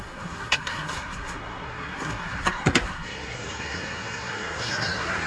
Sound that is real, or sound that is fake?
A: fake